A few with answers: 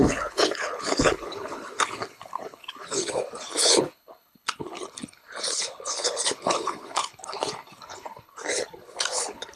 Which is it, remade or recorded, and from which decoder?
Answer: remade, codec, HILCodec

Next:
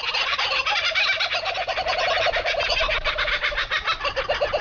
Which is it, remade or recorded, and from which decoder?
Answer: recorded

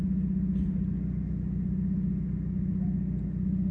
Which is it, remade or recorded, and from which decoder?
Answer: recorded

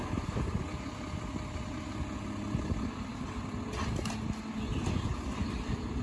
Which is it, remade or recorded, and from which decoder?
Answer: recorded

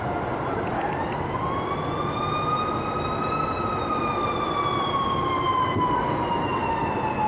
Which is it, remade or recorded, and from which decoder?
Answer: recorded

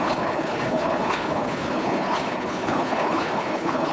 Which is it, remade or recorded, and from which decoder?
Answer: remade, codec, HILCodec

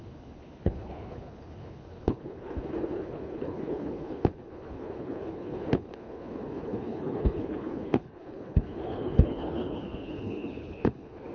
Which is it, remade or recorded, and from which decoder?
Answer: remade, codec, HILCodec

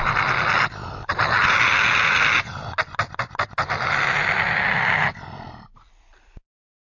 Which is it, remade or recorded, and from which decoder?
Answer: recorded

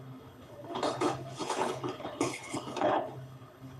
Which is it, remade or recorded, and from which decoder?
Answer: remade, codec, HILCodec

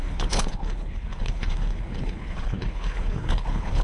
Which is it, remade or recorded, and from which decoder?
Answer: remade, codec, HILCodec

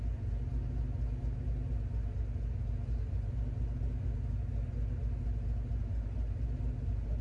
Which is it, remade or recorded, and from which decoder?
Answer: recorded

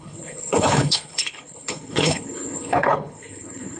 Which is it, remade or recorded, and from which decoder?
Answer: remade, codec, HILCodec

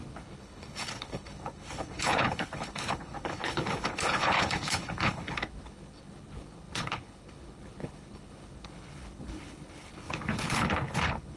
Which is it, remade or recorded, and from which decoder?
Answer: remade, codec, HILCodec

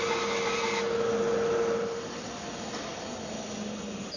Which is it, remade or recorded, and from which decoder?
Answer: recorded